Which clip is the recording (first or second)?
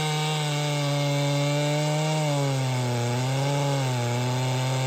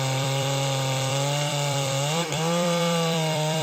first